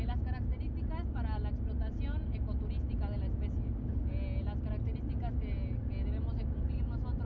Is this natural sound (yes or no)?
yes